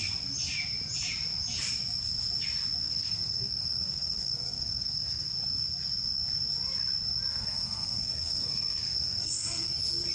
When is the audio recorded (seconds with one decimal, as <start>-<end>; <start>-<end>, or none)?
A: 0.0-2.8; 5.3-7.3; 9.7-10.1